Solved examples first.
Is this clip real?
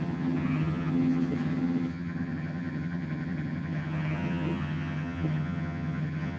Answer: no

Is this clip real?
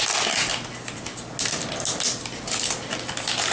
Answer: yes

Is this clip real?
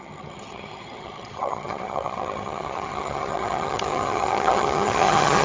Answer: no